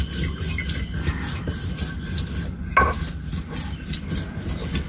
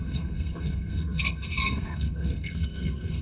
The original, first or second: first